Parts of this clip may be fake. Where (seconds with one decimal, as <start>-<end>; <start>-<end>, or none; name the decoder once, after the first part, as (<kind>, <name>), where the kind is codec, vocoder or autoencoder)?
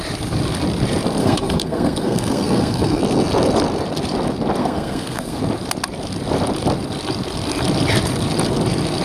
1.2-3.0 (codec, SNAC); 4.6-5.4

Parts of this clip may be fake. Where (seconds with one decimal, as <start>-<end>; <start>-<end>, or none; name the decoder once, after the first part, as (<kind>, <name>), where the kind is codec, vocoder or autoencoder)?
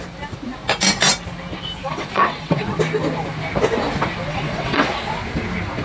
1.8-2.8 (vocoder, WaveNeXt); 4.3-4.9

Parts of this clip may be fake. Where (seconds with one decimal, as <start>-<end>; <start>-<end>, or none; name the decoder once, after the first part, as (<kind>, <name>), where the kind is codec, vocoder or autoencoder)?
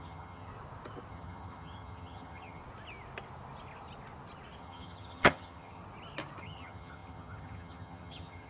0.0-0.5 (vocoder, HiFi-GAN); 1.1-2.6; 4.6-5.8; 6.4-8.5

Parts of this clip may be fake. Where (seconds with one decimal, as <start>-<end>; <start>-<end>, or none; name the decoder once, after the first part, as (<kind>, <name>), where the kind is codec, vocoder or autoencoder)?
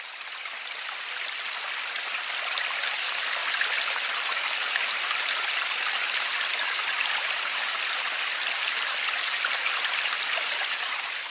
none